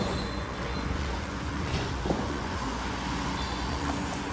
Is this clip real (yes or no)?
no